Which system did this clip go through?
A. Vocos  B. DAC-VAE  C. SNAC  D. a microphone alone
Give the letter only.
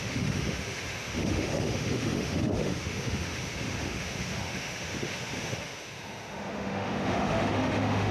B